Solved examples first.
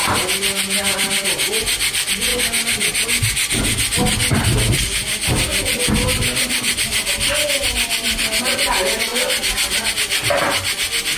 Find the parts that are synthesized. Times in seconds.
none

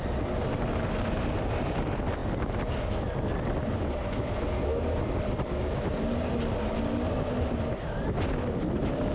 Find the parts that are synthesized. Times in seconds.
none

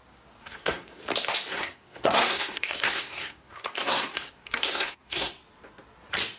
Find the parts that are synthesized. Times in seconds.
0.4-1.0 (codec, SNAC); 1.5-5.3